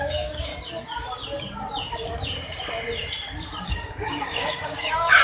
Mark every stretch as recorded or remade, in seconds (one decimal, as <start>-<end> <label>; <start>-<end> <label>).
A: 0.0-0.5 remade; 0.5-3.6 recorded; 3.6-5.2 remade